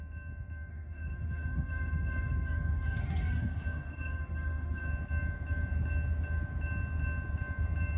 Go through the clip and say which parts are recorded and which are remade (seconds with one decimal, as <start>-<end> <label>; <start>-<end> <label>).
0.0-0.7 recorded; 0.7-4.9 remade; 4.9-8.0 recorded